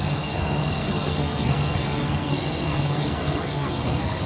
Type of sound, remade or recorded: remade